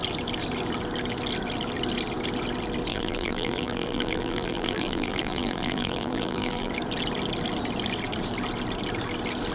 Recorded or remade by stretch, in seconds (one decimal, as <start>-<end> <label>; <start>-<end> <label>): 0.0-2.9 recorded; 2.9-6.7 remade; 6.7-9.5 recorded